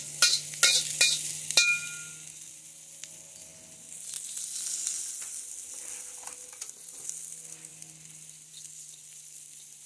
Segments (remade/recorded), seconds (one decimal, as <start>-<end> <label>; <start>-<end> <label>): 0.0-7.7 recorded; 7.7-9.9 remade